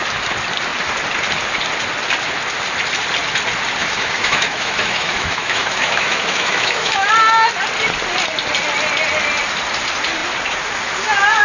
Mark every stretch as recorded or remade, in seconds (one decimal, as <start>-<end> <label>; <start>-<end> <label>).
0.0-3.8 recorded; 3.8-7.1 remade; 7.1-11.4 recorded